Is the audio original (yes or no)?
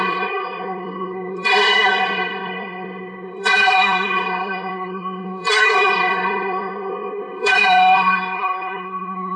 no